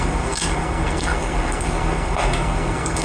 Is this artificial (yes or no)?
yes